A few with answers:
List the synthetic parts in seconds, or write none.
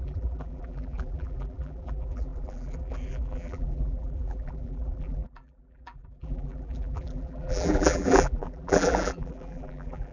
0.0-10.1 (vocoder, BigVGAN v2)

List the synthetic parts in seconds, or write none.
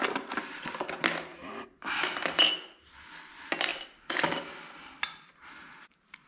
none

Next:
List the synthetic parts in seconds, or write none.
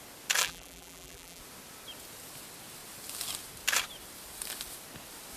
0.4-1.4 (vocoder, BigVGAN v2)